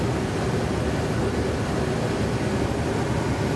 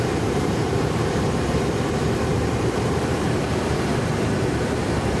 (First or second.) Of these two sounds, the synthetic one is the second